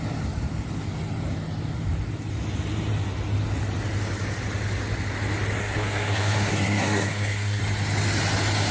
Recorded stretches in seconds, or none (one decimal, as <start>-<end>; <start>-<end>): 0.0-5.6; 7.6-8.7